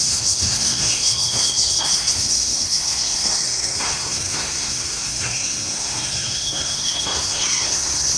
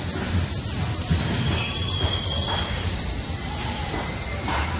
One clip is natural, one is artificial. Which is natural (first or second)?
second